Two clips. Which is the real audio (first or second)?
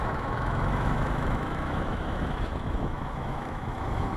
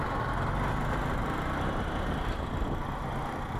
second